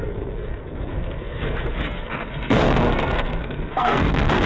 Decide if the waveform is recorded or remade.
remade